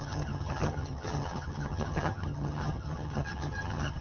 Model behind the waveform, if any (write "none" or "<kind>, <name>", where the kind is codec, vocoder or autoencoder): vocoder, HiFi-GAN